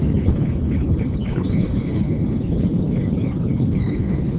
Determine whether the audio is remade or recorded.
remade